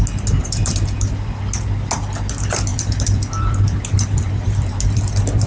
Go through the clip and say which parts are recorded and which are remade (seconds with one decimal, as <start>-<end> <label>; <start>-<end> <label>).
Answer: 0.0-0.4 recorded; 0.4-1.4 remade; 1.4-2.7 recorded; 2.7-5.5 remade